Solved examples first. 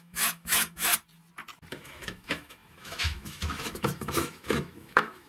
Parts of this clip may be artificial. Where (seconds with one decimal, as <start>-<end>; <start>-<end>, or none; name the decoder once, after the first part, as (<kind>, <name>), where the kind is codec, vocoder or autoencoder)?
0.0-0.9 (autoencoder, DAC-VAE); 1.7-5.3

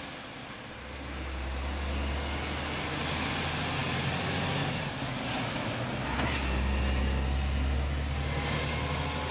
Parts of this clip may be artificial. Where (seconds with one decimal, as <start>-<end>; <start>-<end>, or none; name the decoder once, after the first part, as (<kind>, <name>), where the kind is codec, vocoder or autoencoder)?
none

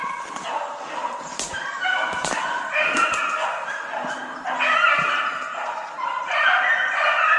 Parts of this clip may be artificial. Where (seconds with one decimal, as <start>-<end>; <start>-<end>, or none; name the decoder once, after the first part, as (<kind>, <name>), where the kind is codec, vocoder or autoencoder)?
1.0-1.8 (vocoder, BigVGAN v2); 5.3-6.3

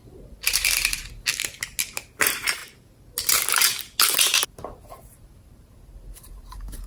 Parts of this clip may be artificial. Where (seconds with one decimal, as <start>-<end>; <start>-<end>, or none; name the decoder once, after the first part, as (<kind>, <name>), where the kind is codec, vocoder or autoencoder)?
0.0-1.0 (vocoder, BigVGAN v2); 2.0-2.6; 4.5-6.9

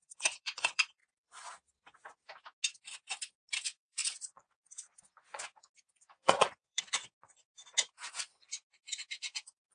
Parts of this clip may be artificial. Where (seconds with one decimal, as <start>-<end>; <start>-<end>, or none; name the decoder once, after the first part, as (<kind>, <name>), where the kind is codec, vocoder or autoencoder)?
0.0-1.0 (vocoder, Vocos); 3.5-7.5; 8.1-9.7